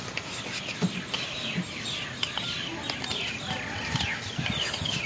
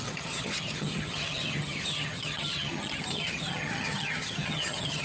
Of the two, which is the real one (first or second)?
first